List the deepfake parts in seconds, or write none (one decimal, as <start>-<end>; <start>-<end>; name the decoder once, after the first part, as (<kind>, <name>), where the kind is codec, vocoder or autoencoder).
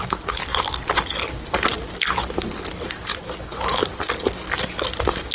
3.1-3.6 (vocoder, Vocos)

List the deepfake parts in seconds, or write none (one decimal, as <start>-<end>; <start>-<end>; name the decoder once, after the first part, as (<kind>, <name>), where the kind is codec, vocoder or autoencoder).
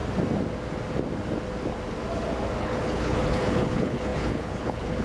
2.6-5.0 (codec, HILCodec)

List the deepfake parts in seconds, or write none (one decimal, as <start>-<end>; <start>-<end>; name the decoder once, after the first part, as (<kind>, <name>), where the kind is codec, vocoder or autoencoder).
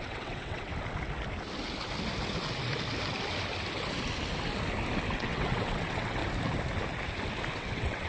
0.0-0.7 (vocoder, WaveNeXt); 5.1-6.2; 7.5-8.1